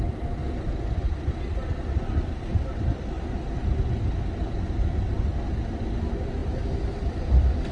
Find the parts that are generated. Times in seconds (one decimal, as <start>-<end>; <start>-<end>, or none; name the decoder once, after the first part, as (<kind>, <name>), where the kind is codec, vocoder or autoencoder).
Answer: none